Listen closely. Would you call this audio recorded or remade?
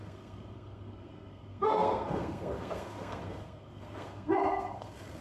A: remade